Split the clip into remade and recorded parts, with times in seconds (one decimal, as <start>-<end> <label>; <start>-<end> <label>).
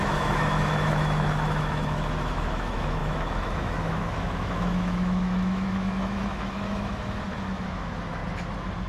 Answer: 0.0-8.2 remade; 8.2-8.9 recorded